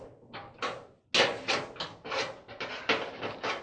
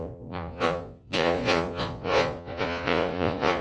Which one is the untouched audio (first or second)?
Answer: first